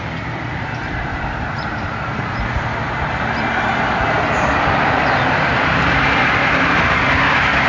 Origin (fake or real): fake